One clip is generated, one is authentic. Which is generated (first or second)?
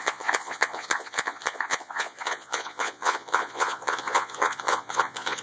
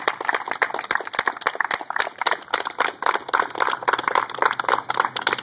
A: first